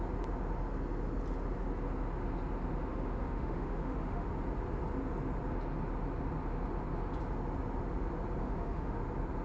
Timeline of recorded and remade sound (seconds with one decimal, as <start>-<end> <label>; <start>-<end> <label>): 0.0-2.9 recorded; 2.9-4.3 remade; 4.3-8.4 recorded; 8.4-9.0 remade; 9.0-9.4 recorded